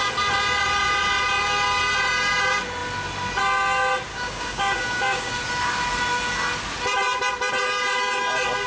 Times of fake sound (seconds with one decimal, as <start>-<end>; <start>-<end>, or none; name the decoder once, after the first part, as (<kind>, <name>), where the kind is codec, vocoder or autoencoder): 4.1-5.3 (codec, DAC)